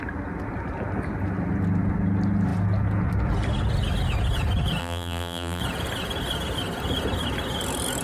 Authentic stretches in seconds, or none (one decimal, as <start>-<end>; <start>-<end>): 0.0-4.8; 5.6-8.0

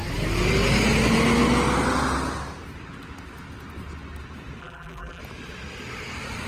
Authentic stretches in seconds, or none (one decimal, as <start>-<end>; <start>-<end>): 0.0-4.6; 5.2-6.5

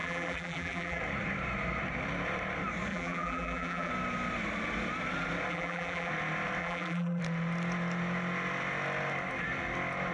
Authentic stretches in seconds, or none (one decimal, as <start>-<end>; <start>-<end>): 1.0-2.9; 3.9-5.5; 6.1-6.6; 7.2-10.1

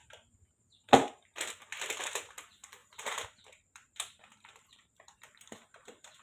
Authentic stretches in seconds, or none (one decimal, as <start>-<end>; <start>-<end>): 0.0-2.3